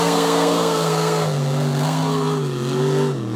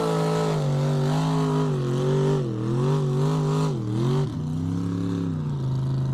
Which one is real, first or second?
second